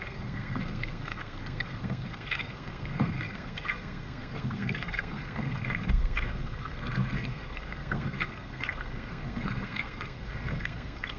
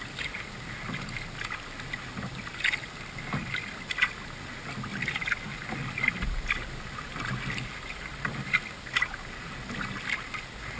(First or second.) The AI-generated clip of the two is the first